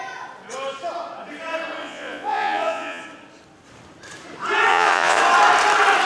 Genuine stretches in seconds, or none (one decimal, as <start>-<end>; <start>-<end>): 0.0-1.8; 3.0-4.7; 5.2-6.0